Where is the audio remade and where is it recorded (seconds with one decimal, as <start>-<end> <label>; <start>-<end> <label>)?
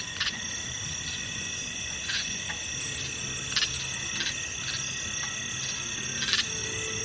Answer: 0.0-0.4 remade; 0.4-1.1 recorded; 1.1-2.6 remade; 2.6-7.0 recorded